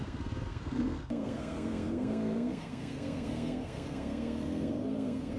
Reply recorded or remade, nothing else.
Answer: remade